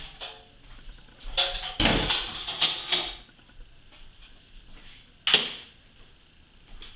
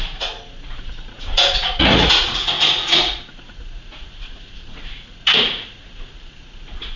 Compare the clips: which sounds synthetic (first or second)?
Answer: second